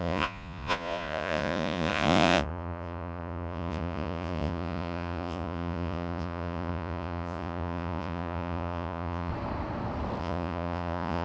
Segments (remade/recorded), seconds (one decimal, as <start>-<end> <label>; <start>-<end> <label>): 0.0-9.3 remade; 9.3-10.2 recorded; 10.2-11.2 remade